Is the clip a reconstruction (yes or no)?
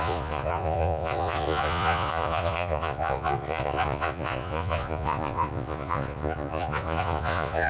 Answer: yes